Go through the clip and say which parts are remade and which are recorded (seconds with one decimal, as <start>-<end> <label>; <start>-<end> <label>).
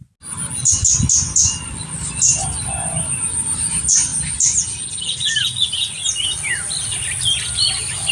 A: 0.0-8.1 recorded